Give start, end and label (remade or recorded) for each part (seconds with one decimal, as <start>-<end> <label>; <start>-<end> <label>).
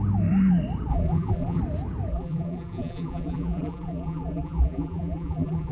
0.0-0.9 recorded; 0.9-1.6 remade; 1.6-2.1 recorded; 2.1-5.7 remade